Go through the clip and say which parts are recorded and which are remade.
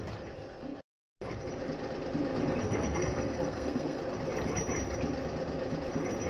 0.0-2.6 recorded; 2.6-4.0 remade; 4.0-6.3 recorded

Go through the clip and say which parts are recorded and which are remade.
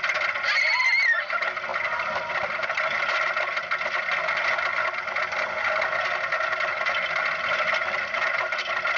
0.0-9.0 recorded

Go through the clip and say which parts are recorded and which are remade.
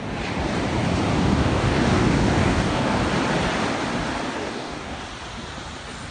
0.0-1.1 recorded; 1.1-3.0 remade; 3.0-4.4 recorded; 4.4-5.0 remade; 5.0-6.1 recorded